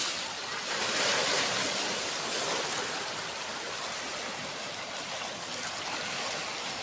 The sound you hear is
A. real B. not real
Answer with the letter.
A